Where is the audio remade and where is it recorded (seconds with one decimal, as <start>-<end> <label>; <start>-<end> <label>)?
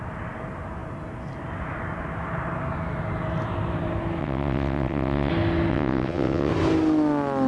0.0-4.2 recorded; 4.2-5.3 remade; 5.3-5.7 recorded; 5.7-6.5 remade; 6.5-7.5 recorded